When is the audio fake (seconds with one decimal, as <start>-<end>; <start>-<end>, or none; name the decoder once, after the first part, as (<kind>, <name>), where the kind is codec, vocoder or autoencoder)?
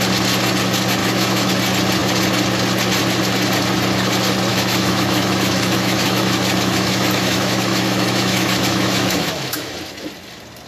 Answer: 1.0-1.5 (autoencoder, DAC-VAE); 4.5-9.7